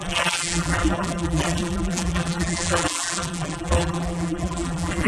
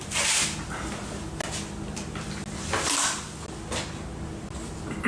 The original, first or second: second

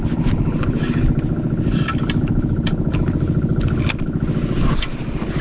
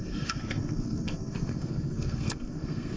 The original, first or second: first